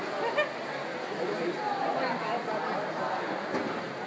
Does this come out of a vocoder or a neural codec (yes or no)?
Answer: no